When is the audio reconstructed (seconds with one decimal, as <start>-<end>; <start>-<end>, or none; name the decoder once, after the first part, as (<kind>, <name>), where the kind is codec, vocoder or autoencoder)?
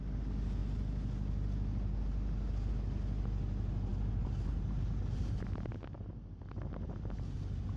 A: none